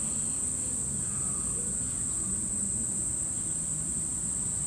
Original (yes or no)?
yes